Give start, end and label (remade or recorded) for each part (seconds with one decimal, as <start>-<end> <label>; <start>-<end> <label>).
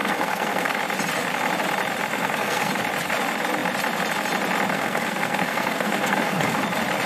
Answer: 0.0-0.8 remade; 0.8-2.1 recorded; 2.1-2.7 remade; 2.7-4.7 recorded; 4.7-6.6 remade; 6.6-7.1 recorded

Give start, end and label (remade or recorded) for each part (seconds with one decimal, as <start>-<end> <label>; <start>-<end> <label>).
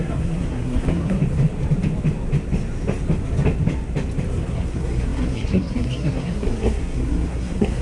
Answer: 0.0-1.2 remade; 1.2-4.3 recorded; 4.3-7.8 remade